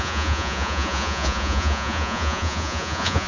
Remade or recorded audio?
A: remade